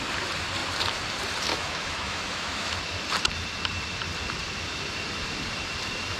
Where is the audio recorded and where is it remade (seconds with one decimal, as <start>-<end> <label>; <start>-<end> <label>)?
0.0-1.5 recorded; 1.5-2.8 remade; 2.8-6.2 recorded